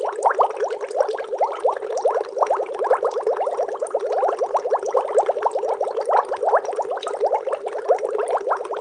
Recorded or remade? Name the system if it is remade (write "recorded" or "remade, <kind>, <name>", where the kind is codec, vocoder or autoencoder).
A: recorded